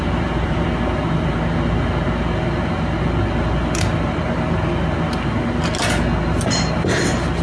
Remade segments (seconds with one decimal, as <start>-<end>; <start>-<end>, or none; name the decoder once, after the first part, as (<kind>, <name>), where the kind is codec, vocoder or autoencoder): 0.0-1.0 (vocoder, BigVGAN v2)